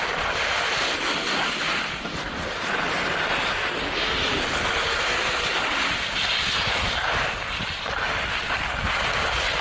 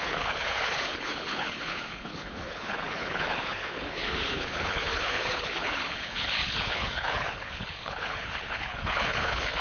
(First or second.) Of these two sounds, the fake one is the second